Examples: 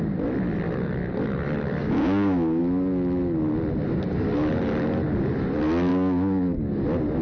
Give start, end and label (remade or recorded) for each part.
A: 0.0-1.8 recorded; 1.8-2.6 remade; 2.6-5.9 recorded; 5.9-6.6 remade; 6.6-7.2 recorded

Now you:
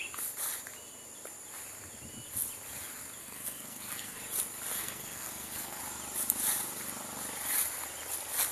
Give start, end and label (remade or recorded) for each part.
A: 0.0-3.2 recorded; 3.2-4.2 remade; 4.2-4.7 recorded; 4.7-5.8 remade; 5.8-8.5 recorded

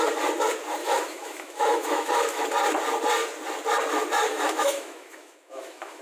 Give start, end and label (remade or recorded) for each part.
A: 0.0-0.8 recorded; 0.8-2.4 remade; 2.4-4.3 recorded; 4.3-6.0 remade

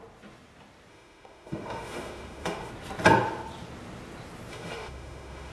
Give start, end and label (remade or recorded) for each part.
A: 0.0-0.9 recorded; 0.9-2.7 remade; 2.7-4.5 recorded; 4.5-5.5 remade

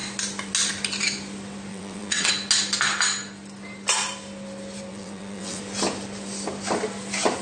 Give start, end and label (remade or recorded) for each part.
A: 0.0-1.7 recorded; 1.7-2.3 remade; 2.3-4.9 recorded; 4.9-5.6 remade; 5.6-7.4 recorded

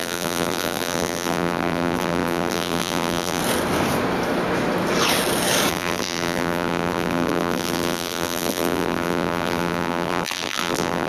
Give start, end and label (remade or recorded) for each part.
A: 0.0-3.4 remade; 3.4-5.7 recorded; 5.7-11.1 remade

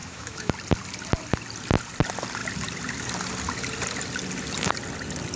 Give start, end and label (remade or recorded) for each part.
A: 0.0-0.5 remade; 0.5-5.4 recorded

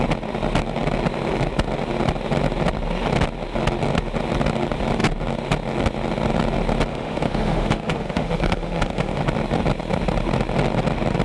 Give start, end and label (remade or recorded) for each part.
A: 0.0-6.9 recorded; 6.9-9.2 remade; 9.2-11.2 recorded